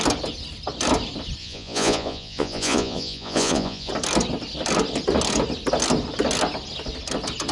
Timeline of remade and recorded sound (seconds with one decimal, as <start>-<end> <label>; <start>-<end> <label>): 0.0-1.4 recorded; 1.4-3.9 remade; 3.9-7.5 recorded